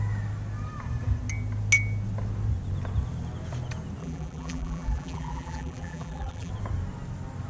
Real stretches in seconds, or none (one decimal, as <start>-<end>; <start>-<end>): 0.0-4.0; 6.5-7.5